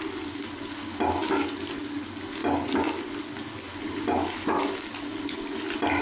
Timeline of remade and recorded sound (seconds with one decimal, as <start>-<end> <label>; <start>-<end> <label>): 0.0-1.2 recorded; 1.2-2.0 remade; 2.0-5.1 recorded; 5.1-6.0 remade